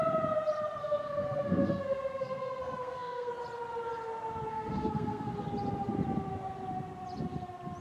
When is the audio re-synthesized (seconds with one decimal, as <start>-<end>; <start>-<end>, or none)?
0.8-3.3; 4.5-5.3